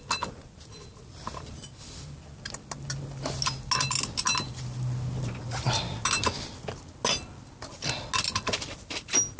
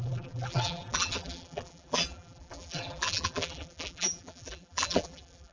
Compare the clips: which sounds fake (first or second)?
second